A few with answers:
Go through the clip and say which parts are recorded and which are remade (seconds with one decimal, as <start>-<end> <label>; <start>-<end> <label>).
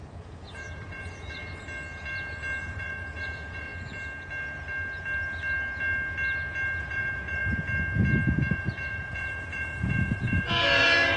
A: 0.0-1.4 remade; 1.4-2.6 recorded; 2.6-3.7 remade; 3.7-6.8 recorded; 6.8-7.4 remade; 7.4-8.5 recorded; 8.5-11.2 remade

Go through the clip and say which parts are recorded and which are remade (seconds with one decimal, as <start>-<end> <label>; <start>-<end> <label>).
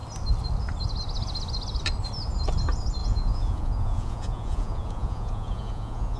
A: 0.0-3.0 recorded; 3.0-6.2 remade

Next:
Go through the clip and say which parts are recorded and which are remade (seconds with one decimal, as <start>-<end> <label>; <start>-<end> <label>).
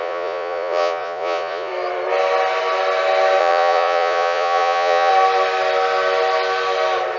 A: 0.0-1.7 remade; 1.7-3.4 recorded; 3.4-5.1 remade; 5.1-7.2 recorded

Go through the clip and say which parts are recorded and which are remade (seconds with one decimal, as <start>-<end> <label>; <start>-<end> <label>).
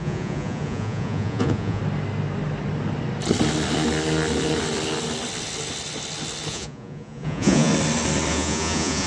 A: 0.0-1.8 remade; 1.8-6.5 recorded; 6.5-7.7 remade; 7.7-8.3 recorded; 8.3-9.1 remade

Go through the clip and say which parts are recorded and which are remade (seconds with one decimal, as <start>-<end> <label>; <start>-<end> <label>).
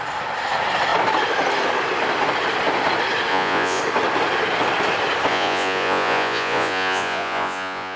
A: 0.0-3.3 recorded; 3.3-3.8 remade; 3.8-5.3 recorded; 5.3-8.0 remade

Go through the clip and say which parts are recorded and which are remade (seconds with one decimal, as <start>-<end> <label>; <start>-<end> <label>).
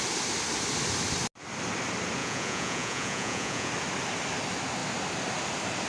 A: 0.0-2.2 recorded; 2.2-3.7 remade; 3.7-5.9 recorded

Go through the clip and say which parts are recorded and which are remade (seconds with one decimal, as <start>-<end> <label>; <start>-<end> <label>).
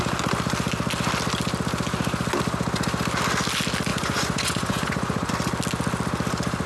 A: 0.0-3.9 recorded; 3.9-5.3 remade; 5.3-6.7 recorded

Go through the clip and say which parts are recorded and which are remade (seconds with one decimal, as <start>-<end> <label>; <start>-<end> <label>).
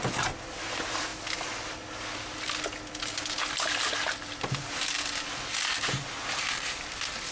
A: 0.0-7.3 recorded